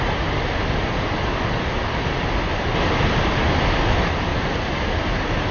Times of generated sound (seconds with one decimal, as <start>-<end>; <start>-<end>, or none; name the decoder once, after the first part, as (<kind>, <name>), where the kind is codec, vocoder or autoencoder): none